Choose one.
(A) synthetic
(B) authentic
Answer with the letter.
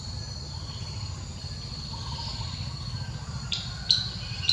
B